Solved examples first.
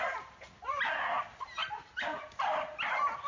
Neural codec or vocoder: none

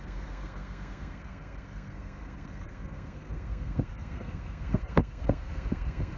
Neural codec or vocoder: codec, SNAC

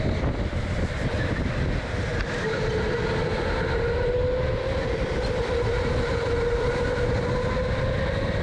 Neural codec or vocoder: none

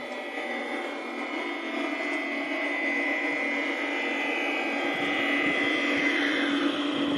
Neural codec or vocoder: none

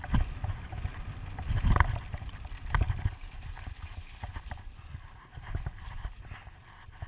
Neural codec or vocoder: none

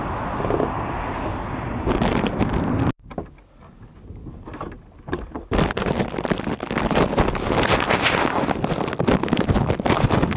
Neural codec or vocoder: none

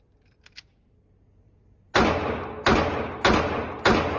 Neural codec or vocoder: none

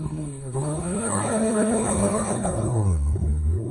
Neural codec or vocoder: codec, SNAC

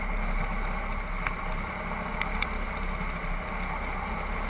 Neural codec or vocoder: none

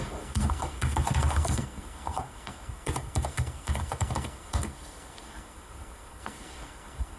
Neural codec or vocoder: codec, SNAC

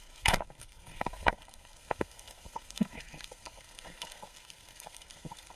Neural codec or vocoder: codec, SNAC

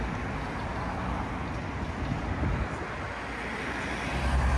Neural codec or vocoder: none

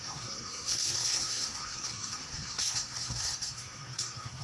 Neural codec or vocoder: codec, SNAC